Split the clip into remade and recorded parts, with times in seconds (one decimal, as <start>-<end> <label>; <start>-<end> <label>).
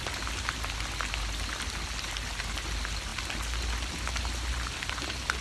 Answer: 0.0-5.4 recorded